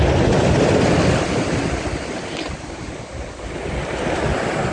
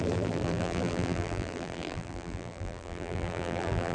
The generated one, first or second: second